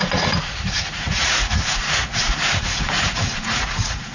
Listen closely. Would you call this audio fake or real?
fake